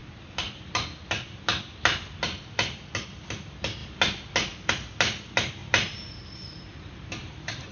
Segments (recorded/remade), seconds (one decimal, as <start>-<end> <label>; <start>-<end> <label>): 0.0-5.6 recorded; 5.6-7.3 remade; 7.3-7.7 recorded